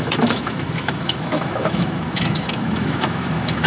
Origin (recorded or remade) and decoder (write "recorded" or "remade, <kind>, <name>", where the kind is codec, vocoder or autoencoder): remade, autoencoder, DAC-VAE